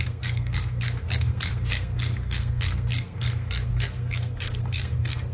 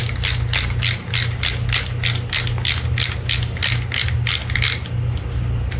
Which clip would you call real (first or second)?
second